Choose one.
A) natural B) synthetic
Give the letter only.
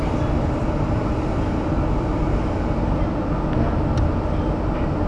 A